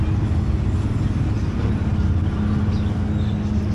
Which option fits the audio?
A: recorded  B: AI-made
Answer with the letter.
A